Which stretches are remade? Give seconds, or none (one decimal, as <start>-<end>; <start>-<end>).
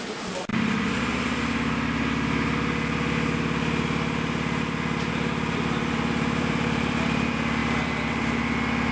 0.0-0.5; 5.1-8.9